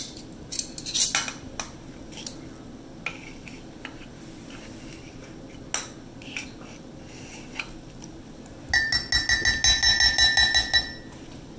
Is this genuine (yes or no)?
yes